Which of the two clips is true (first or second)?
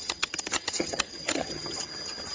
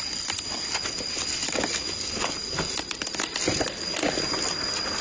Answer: second